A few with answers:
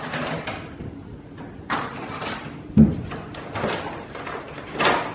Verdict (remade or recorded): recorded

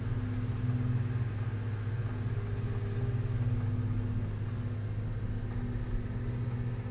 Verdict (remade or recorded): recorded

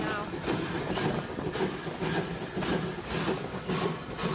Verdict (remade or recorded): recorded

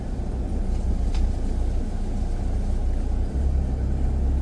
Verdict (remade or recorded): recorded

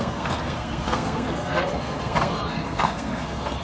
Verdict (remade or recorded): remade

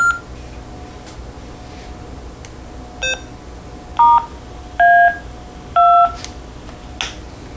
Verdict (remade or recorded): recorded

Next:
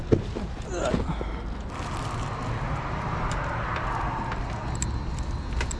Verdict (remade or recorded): recorded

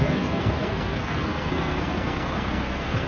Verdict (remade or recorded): remade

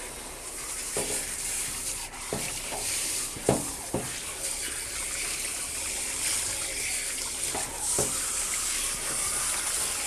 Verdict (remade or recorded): recorded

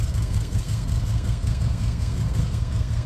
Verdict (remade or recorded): remade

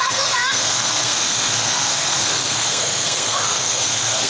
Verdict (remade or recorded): remade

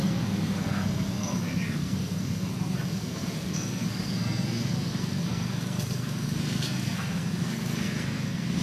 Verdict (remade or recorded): remade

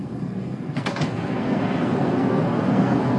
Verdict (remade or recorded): remade